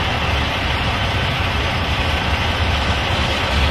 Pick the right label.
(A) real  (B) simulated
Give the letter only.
A